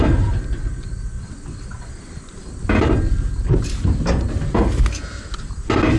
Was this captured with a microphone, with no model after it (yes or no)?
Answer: yes